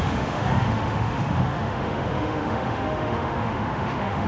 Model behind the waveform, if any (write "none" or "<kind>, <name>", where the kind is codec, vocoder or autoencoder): autoencoder, DAC-VAE